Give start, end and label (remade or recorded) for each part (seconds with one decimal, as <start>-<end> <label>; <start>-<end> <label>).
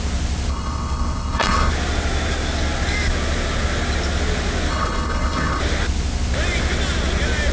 0.0-0.5 recorded; 0.5-1.7 remade; 1.7-4.7 recorded; 4.7-5.6 remade; 5.6-7.5 recorded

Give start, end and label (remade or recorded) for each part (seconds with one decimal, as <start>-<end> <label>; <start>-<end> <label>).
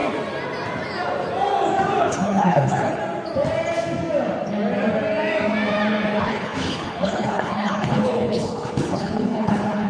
0.0-2.0 recorded; 2.0-3.0 remade; 3.0-6.2 recorded; 6.2-9.9 remade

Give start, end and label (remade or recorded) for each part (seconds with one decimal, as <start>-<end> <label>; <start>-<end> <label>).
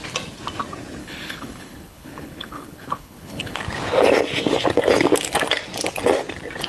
0.0-1.0 recorded; 1.0-3.6 remade; 3.6-6.7 recorded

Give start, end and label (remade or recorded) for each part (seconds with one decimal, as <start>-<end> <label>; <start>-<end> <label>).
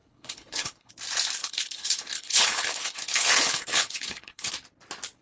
0.0-0.9 remade; 0.9-1.4 recorded; 1.4-4.5 remade; 4.5-5.2 recorded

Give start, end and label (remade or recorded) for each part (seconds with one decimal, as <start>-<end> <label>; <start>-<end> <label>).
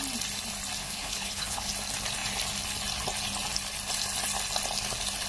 0.0-0.8 recorded; 0.8-1.7 remade; 1.7-5.3 recorded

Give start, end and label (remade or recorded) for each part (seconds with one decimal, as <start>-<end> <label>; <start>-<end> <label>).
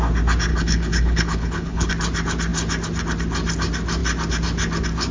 0.0-0.5 recorded; 0.5-1.9 remade; 1.9-5.1 recorded